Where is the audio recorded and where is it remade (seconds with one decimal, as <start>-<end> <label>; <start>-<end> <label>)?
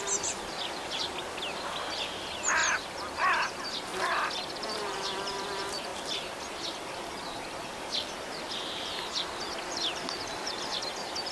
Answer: 0.0-3.9 remade; 3.9-4.7 recorded; 4.7-5.9 remade; 5.9-8.5 recorded; 8.5-11.3 remade